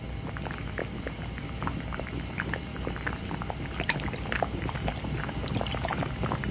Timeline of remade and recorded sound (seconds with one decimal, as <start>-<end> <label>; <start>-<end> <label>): 0.0-6.5 recorded